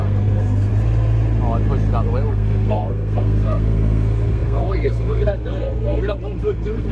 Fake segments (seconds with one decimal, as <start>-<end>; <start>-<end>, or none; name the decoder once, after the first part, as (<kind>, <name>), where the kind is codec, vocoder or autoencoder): 0.0-0.7 (codec, SNAC); 2.3-6.9